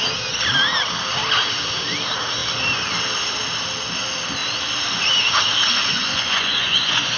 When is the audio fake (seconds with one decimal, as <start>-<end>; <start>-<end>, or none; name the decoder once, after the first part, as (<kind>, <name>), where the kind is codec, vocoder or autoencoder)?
5.8-7.2 (vocoder, Vocos)